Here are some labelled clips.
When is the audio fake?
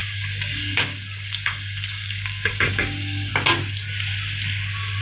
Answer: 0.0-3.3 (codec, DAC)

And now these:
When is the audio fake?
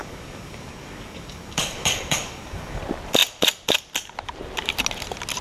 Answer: 0.0-2.8 (codec, DAC)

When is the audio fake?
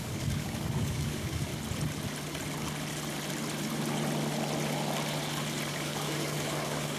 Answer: 0.0-1.5 (codec, DAC); 5.7-7.0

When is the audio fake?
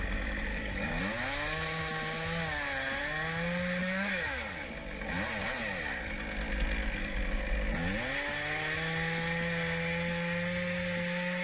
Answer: 0.5-1.0 (codec, DAC); 3.8-4.7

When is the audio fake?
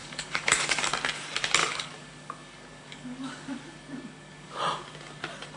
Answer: 0.0-0.8 (codec, DAC); 1.6-4.6